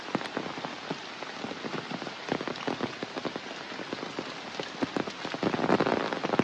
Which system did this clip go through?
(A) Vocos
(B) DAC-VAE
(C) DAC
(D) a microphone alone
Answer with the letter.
D